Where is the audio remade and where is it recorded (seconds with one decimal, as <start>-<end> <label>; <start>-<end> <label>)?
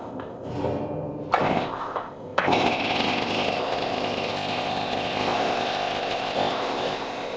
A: 0.0-0.5 remade; 0.5-1.4 recorded; 1.4-7.4 remade